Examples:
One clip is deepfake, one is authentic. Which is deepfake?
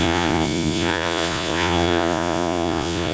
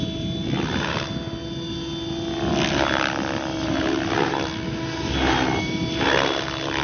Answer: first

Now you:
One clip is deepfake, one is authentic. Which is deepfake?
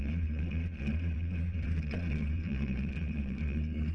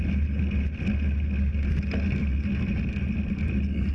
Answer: first